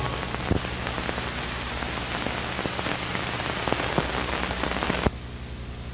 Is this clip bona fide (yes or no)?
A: yes